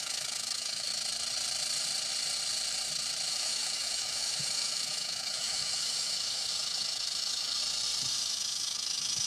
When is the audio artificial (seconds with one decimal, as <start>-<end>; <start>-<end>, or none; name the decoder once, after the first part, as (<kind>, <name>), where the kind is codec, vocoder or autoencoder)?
0.0-0.9 (autoencoder, DAC-VAE); 3.3-7.6; 8.1-9.3